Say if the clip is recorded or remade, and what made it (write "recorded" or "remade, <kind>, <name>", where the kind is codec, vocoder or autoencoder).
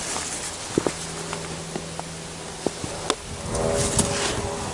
recorded